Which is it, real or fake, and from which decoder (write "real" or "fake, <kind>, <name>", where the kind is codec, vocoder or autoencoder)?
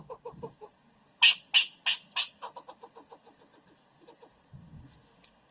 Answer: real